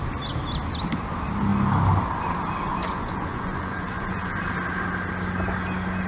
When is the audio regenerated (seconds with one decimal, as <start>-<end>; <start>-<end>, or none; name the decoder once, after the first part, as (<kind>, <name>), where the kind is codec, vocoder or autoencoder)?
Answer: 2.7-4.4 (vocoder, Vocos)